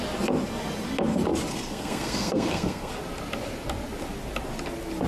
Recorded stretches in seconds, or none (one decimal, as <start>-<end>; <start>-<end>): 0.0-1.5; 2.9-5.1